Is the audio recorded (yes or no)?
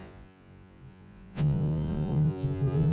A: no